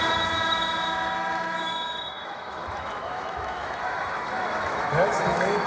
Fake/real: fake